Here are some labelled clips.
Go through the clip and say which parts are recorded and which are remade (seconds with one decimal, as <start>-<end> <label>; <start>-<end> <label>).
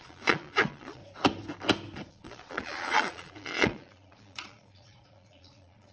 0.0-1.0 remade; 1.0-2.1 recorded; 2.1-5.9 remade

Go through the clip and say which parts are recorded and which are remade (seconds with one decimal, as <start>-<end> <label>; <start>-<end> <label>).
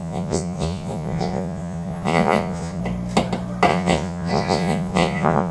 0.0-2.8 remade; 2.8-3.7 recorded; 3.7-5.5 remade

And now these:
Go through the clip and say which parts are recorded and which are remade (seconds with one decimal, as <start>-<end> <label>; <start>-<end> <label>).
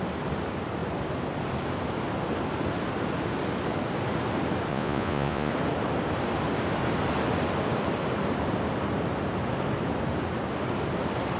0.0-4.7 recorded; 4.7-5.5 remade; 5.5-11.4 recorded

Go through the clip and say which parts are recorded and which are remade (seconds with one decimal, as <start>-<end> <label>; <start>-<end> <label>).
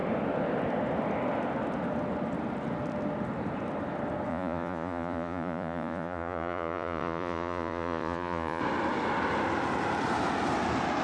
0.0-4.3 recorded; 4.3-8.6 remade; 8.6-11.0 recorded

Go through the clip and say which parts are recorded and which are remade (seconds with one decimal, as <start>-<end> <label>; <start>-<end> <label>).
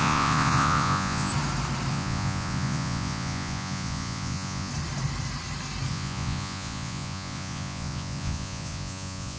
0.0-1.3 remade; 1.3-1.9 recorded; 1.9-4.7 remade; 4.7-5.9 recorded; 5.9-9.4 remade